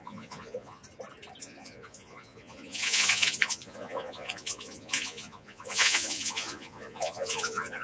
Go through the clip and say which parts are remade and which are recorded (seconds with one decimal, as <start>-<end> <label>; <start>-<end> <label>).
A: 0.0-0.8 remade; 0.8-1.4 recorded; 1.4-7.8 remade